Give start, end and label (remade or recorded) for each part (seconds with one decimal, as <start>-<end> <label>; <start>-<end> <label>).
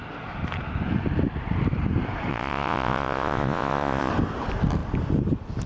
0.0-2.3 recorded; 2.3-4.1 remade; 4.1-5.7 recorded